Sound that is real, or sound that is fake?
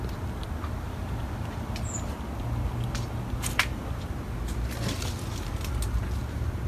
real